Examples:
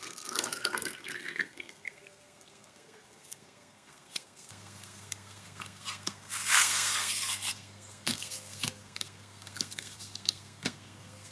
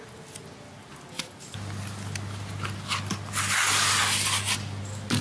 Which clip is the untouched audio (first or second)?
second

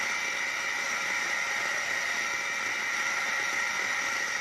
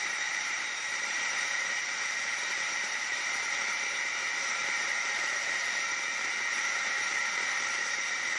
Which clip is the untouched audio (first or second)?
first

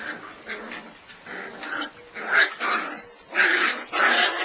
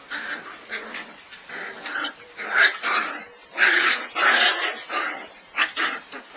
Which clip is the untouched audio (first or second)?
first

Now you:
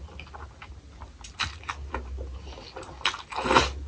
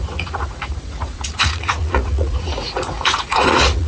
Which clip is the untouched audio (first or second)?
first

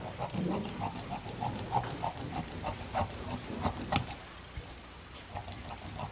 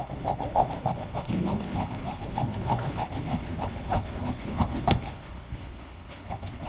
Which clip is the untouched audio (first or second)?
first